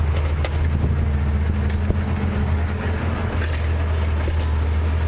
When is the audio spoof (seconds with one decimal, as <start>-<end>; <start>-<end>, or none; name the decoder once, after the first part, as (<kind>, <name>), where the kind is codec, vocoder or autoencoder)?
2.4-3.5 (codec, DAC)